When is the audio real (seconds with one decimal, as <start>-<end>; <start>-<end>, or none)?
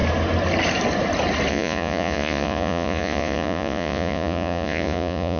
0.0-1.5